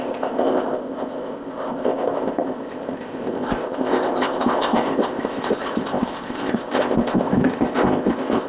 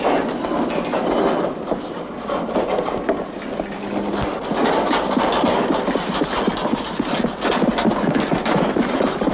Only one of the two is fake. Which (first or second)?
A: first